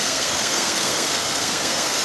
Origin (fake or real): fake